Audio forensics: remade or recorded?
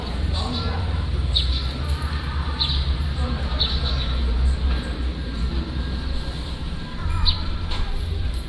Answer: remade